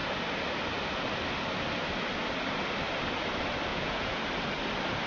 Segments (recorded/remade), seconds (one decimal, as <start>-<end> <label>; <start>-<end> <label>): 0.0-3.7 recorded; 3.7-4.2 remade; 4.2-5.1 recorded